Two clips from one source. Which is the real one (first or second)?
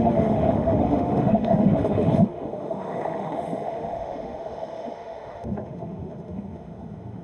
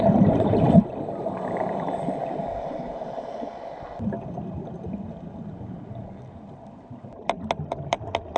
second